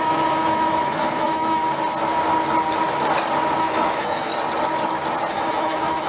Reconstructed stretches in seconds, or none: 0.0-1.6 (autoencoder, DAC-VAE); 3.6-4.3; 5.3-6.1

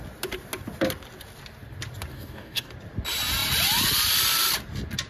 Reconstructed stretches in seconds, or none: 2.1-2.7 (codec, DAC)

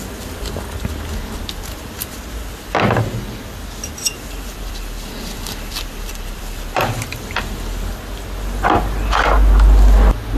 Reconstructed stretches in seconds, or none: 4.1-6.8 (vocoder, BigVGAN v2)

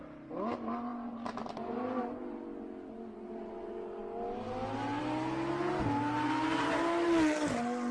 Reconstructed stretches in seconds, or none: none

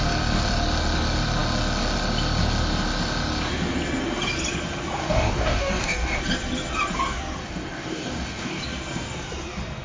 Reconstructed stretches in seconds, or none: 5.0-6.2 (codec, DAC); 7.4-8.6

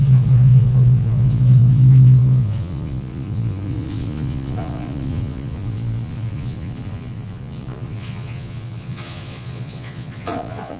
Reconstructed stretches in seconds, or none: 0.0-10.8 (vocoder, Vocos)

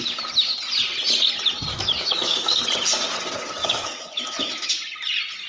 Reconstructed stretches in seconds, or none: 1.7-2.6 (autoencoder, DAC-VAE); 3.6-4.7